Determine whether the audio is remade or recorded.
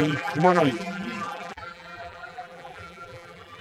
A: remade